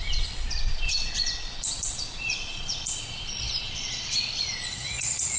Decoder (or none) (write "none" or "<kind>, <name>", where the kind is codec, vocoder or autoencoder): vocoder, Vocos